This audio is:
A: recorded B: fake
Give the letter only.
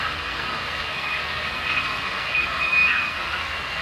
B